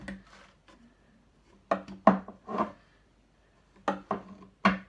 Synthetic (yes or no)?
no